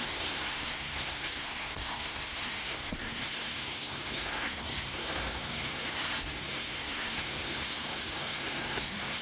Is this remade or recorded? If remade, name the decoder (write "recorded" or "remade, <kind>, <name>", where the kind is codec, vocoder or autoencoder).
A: remade, codec, SNAC